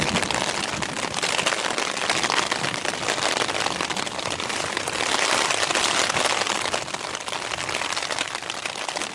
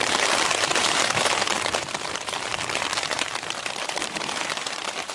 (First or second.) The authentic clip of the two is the first